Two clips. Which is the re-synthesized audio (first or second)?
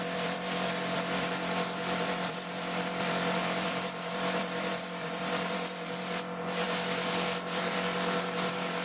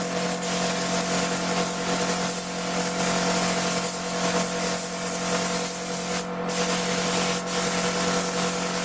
first